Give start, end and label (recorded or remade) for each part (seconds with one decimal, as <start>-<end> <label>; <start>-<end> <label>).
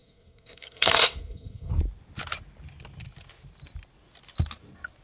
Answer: 0.0-1.7 remade; 1.7-5.0 recorded